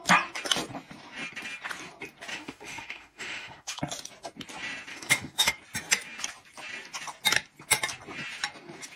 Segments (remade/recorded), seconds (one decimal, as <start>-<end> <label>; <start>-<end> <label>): 0.0-2.3 recorded; 2.3-3.8 remade; 3.8-4.9 recorded; 4.9-5.5 remade; 5.5-9.0 recorded

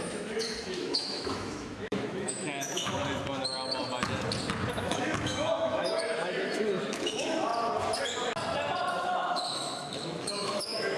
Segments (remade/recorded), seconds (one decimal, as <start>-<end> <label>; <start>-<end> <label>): 0.0-3.0 remade; 3.0-4.7 recorded; 4.7-7.5 remade; 7.5-8.9 recorded; 8.9-11.0 remade

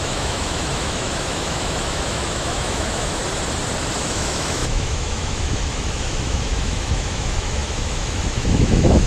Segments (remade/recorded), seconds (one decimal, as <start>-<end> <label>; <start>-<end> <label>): 0.0-3.2 remade; 3.2-4.0 recorded; 4.0-9.1 remade

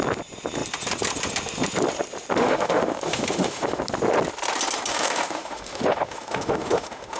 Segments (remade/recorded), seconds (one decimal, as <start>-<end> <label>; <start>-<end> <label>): 0.0-2.4 recorded; 2.4-3.8 remade; 3.8-4.9 recorded; 4.9-7.2 remade

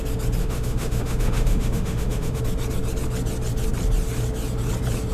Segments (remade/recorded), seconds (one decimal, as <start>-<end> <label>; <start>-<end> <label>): 0.0-0.4 recorded; 0.4-2.4 remade; 2.4-5.1 recorded

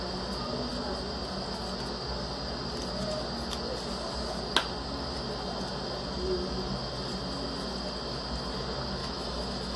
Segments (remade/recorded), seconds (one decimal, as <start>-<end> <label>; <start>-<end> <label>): 0.0-9.0 recorded; 9.0-9.8 remade